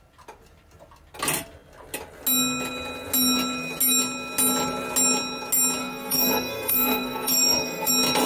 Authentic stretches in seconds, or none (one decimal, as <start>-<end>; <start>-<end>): 0.0-5.8; 7.9-8.3